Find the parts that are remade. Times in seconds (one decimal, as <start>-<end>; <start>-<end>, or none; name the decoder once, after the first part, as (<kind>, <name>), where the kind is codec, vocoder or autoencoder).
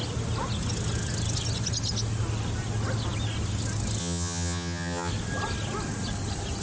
4.0-5.1 (vocoder, HiFi-GAN)